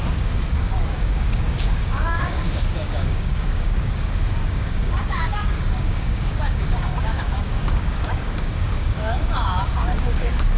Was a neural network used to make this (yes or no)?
yes